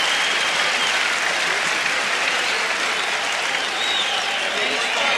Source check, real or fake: fake